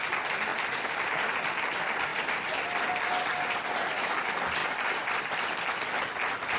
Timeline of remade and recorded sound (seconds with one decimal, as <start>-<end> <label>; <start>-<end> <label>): 0.0-0.5 recorded; 0.5-1.3 remade; 1.3-2.1 recorded; 2.1-2.9 remade; 2.9-4.6 recorded; 4.6-6.0 remade; 6.0-6.6 recorded